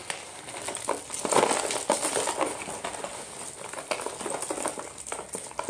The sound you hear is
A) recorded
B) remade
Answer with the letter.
A